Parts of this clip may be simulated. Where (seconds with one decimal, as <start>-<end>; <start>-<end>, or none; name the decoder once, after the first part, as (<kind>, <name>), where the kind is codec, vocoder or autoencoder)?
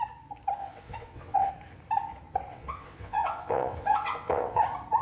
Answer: 0.6-1.5 (vocoder, WaveNeXt); 2.5-4.6